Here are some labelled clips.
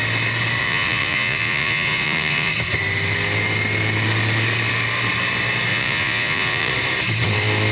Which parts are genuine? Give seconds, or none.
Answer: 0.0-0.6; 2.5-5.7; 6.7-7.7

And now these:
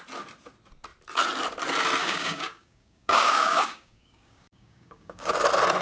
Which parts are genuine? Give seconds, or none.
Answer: 0.0-2.0; 5.3-5.8

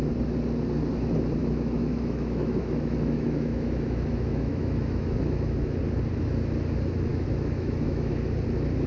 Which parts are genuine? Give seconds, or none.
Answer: 0.0-1.4; 5.8-7.1; 8.1-8.9

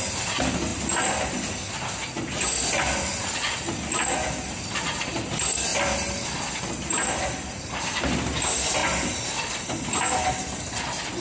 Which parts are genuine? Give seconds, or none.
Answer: 0.0-11.2

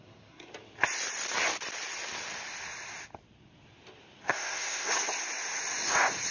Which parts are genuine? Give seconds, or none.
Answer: 0.5-4.3; 4.9-6.3